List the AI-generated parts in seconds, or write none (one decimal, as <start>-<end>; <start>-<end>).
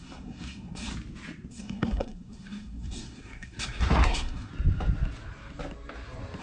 0.0-0.9; 1.5-4.5